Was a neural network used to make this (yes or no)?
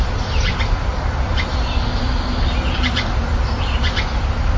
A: no